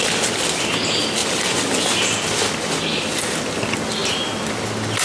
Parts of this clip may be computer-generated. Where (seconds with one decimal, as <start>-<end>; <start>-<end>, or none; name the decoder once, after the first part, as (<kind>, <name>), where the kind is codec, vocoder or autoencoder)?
none